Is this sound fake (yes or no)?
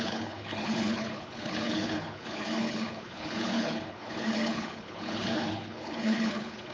yes